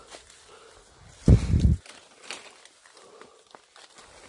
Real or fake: real